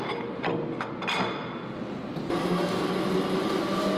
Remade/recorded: recorded